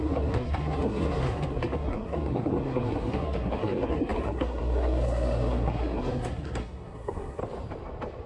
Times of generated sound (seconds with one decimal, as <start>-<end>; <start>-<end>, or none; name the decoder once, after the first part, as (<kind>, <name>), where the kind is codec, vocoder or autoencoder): 0.0-7.4 (codec, SNAC)